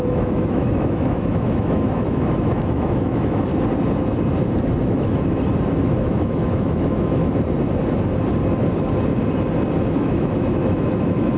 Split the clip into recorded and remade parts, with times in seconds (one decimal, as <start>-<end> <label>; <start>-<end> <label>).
0.0-3.5 remade; 3.5-5.8 recorded; 5.8-7.2 remade; 7.2-9.9 recorded; 9.9-11.4 remade